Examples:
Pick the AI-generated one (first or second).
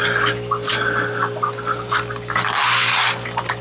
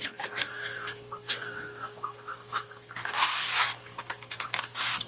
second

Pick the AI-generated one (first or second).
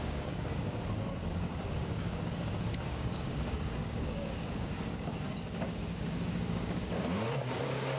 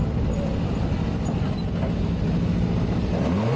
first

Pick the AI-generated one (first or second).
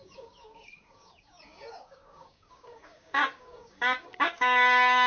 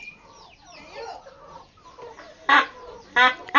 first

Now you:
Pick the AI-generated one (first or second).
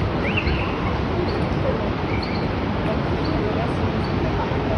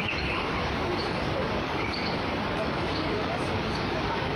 second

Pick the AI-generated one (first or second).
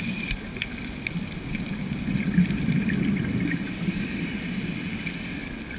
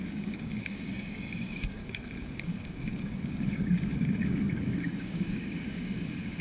second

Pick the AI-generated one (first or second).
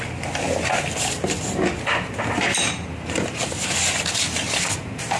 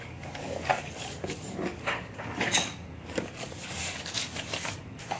second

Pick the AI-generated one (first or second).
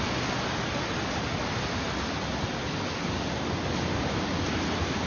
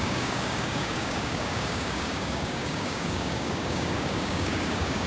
second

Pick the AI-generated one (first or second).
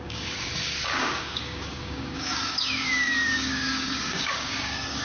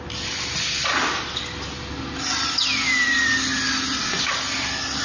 first